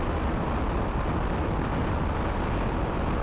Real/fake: real